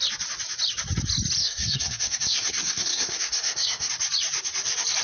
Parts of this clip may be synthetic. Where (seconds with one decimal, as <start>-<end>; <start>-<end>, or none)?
1.4-3.9